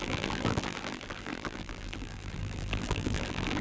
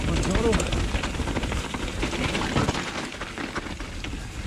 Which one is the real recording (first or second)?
second